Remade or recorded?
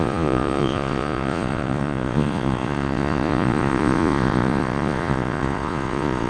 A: remade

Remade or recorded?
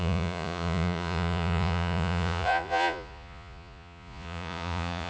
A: remade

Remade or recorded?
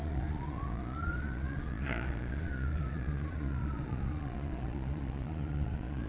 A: remade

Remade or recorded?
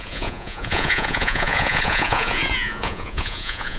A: remade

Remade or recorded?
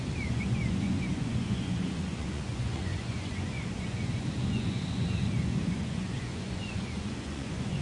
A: remade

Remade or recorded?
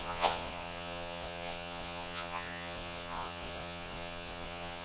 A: remade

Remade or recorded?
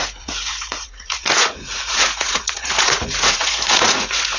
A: remade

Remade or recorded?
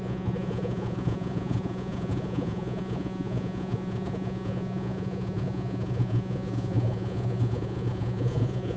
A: remade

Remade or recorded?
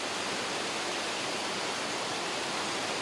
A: recorded